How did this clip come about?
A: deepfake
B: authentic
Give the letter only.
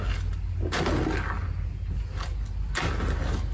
B